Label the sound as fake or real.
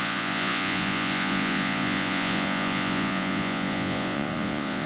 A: fake